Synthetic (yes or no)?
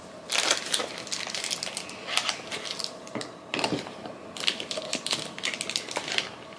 no